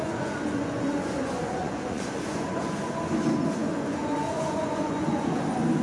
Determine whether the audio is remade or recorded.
remade